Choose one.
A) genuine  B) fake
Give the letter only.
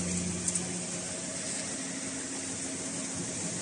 A